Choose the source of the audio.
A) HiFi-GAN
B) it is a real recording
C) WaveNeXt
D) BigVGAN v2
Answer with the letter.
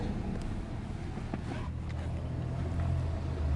B